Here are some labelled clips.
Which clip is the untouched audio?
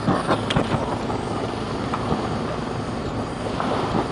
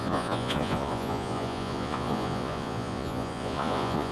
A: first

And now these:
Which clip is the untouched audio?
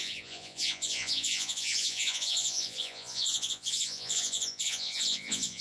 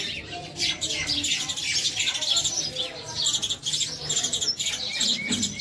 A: second